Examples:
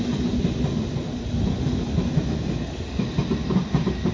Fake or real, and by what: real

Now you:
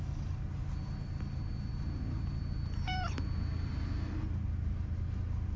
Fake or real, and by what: real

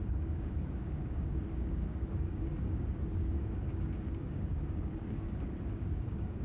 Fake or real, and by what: fake, codec, DAC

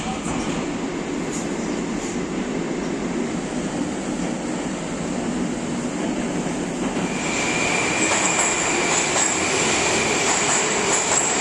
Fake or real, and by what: real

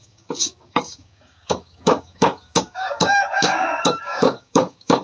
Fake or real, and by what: fake, codec, DAC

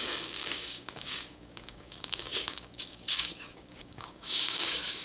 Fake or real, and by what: fake, codec, DAC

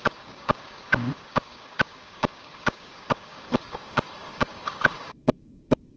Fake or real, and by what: fake, codec, DAC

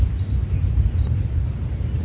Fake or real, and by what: real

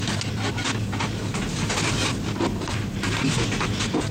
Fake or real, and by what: real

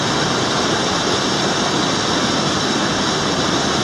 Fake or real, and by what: real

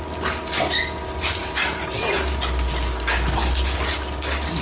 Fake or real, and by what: real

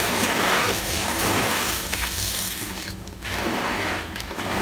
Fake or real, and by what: fake, codec, DAC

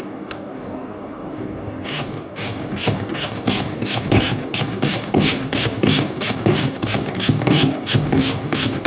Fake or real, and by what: fake, codec, DAC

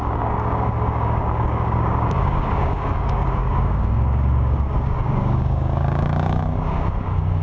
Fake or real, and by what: fake, codec, DAC